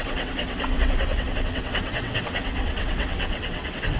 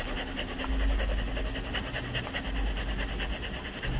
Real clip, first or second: second